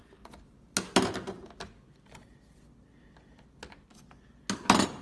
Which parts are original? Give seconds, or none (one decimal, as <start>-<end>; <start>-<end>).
0.0-5.0